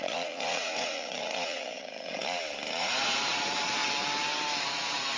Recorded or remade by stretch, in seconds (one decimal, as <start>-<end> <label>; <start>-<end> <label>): 0.0-2.2 remade; 2.2-2.8 recorded; 2.8-3.8 remade; 3.8-4.6 recorded; 4.6-5.2 remade